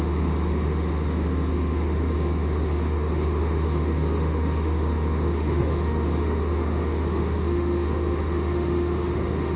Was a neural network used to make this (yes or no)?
yes